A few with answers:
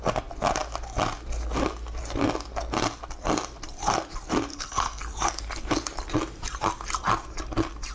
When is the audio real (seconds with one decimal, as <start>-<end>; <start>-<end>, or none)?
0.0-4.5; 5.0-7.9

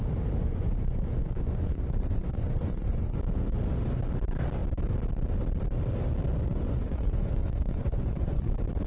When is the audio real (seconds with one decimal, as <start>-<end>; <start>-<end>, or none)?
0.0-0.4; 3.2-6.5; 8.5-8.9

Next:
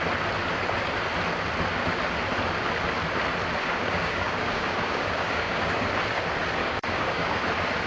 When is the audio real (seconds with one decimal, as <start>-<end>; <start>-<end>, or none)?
0.0-3.6; 5.9-6.6; 7.4-7.9

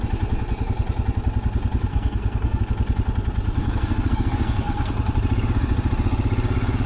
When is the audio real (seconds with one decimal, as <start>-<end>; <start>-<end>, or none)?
0.0-1.9; 2.6-3.6; 4.9-6.9

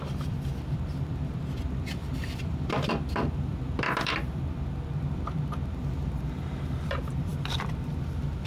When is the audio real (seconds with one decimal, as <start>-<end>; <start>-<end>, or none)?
none

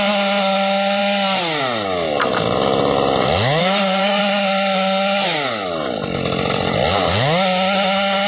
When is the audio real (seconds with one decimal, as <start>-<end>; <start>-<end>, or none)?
0.0-3.6; 4.2-8.3

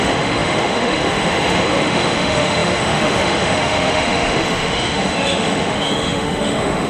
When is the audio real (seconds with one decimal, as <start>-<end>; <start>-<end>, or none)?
none

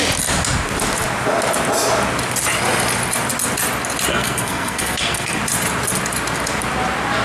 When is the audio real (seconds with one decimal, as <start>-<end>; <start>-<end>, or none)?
0.0-4.1; 5.4-7.2